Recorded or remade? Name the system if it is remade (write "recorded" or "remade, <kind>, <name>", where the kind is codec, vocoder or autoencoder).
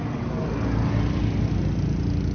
recorded